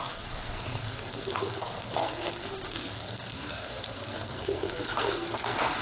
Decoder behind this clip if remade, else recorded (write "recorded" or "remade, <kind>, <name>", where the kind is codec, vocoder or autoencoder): remade, codec, SNAC